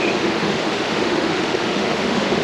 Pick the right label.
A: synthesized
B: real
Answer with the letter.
A